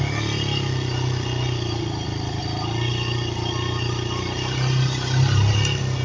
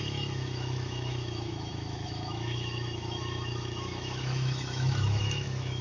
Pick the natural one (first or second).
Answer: first